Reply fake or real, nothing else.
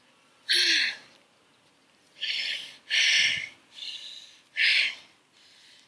real